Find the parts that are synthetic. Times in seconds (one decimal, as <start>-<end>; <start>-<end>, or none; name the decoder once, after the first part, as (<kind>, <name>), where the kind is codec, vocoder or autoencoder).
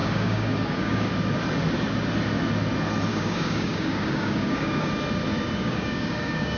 0.0-1.1 (codec, DAC); 3.1-4.9; 5.6-6.6